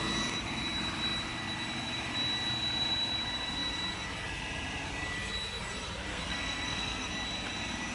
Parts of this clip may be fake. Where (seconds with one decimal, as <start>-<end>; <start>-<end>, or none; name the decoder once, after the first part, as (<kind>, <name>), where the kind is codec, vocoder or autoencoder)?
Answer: 6.1-7.1 (codec, SNAC)